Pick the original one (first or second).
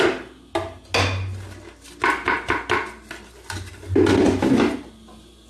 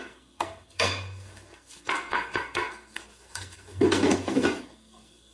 first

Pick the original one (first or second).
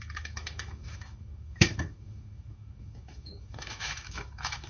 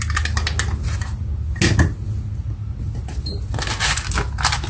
second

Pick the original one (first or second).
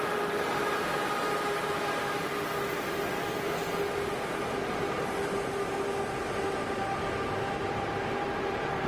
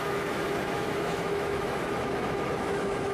first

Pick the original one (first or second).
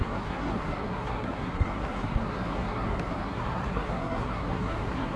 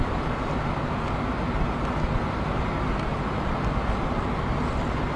second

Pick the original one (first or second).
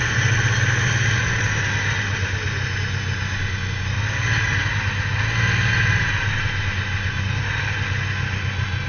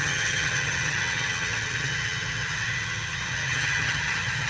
first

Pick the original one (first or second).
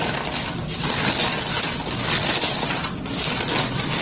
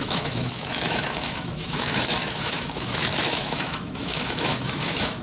first